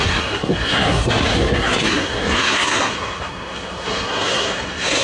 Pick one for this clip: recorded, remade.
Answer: remade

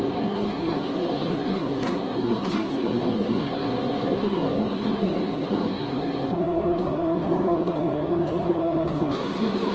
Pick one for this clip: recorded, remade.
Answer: remade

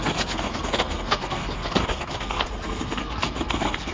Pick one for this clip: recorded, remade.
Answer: remade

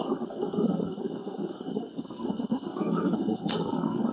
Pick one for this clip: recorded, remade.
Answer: remade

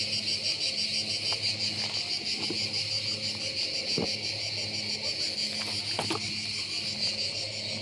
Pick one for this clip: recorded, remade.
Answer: recorded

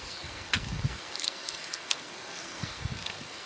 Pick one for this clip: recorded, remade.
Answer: remade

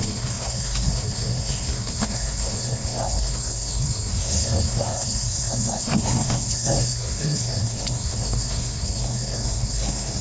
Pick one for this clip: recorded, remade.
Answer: remade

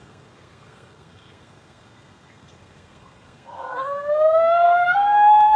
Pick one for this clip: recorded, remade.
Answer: remade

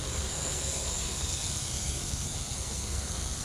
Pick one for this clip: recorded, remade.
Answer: remade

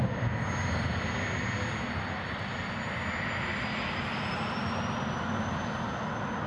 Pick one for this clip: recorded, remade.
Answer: recorded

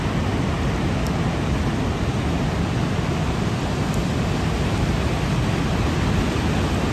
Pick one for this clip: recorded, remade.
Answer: recorded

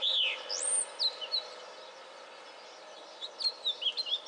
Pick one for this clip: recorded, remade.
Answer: recorded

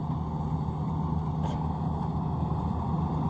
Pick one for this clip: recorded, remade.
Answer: recorded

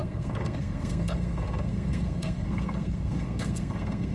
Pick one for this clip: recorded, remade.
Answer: remade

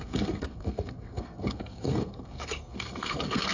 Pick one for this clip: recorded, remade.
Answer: remade